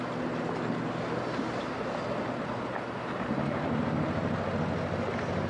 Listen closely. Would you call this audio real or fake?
real